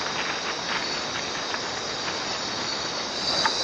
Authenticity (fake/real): real